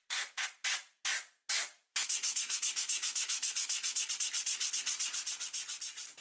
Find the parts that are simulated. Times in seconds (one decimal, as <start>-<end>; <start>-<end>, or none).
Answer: 1.9-4.1